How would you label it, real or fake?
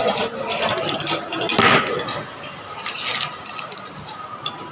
real